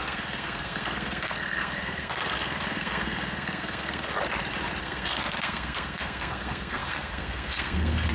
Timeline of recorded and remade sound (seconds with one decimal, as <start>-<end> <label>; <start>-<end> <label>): 0.0-4.1 remade; 4.1-4.8 recorded; 4.8-8.1 remade